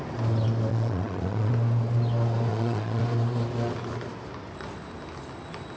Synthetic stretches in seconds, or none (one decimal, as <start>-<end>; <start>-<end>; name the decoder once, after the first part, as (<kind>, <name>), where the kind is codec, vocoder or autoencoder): 0.7-1.5 (vocoder, Vocos); 2.5-3.0